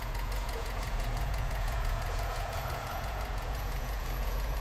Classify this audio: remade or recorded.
remade